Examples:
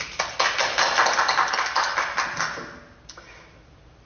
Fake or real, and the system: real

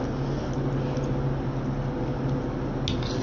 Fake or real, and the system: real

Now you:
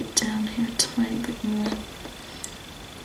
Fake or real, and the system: real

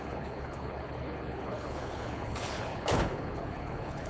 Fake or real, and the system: fake, codec, HILCodec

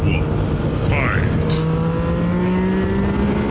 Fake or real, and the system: real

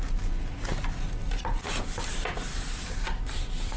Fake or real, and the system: real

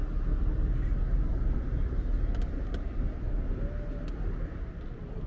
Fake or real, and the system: real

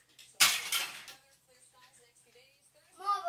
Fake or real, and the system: real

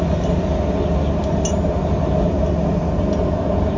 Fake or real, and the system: real